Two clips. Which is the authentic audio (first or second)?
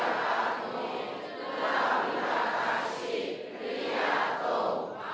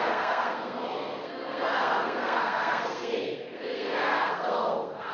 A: first